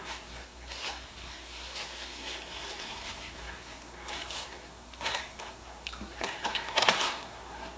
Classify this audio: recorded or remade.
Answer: remade